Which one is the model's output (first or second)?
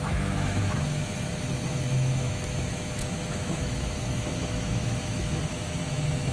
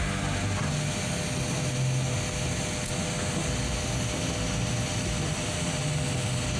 first